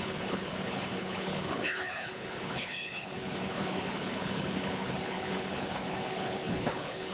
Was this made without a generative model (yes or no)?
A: no